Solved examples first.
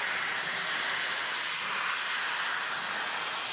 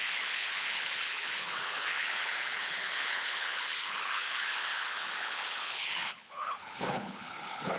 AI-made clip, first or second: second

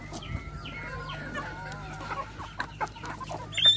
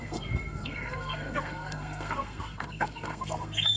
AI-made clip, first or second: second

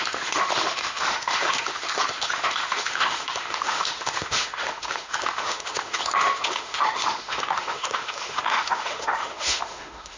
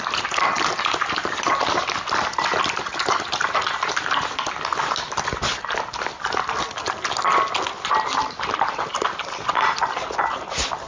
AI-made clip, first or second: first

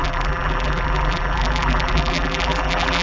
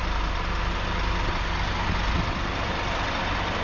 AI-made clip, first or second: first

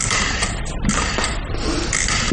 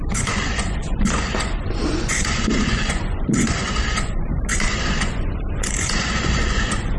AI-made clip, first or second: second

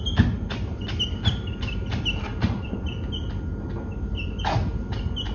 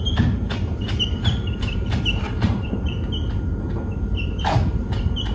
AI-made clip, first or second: second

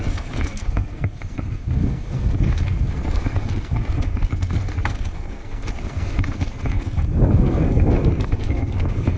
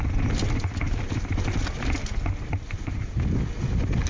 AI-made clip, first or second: first